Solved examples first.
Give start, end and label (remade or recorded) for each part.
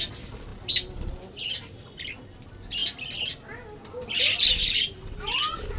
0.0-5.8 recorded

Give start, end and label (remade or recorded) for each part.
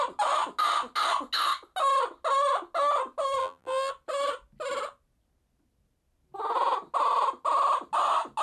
0.0-3.4 recorded; 3.4-3.9 remade; 3.9-8.4 recorded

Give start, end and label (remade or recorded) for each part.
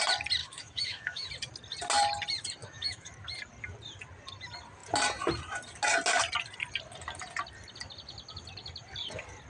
0.0-0.4 recorded; 0.4-1.3 remade; 1.3-2.6 recorded; 2.6-3.1 remade; 3.1-9.5 recorded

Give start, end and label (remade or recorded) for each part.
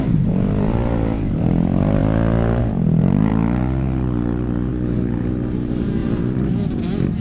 0.0-2.0 remade; 2.0-2.6 recorded; 2.6-3.3 remade; 3.3-4.7 recorded; 4.7-7.2 remade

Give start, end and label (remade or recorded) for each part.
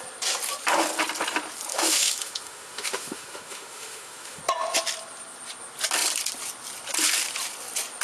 0.0-1.7 recorded; 1.7-4.4 remade; 4.4-8.0 recorded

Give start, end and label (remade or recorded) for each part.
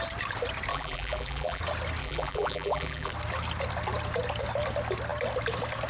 0.0-0.7 recorded; 0.7-1.6 remade; 1.6-2.0 recorded; 2.0-3.1 remade; 3.1-5.9 recorded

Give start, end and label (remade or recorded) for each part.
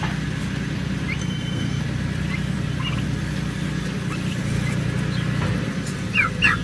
0.0-1.2 recorded; 1.2-1.8 remade; 1.8-6.6 recorded